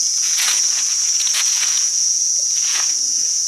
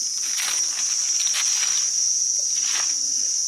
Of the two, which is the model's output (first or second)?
first